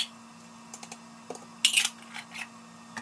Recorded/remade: recorded